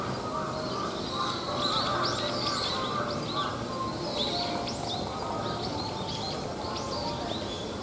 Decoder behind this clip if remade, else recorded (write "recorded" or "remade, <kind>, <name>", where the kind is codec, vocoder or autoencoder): recorded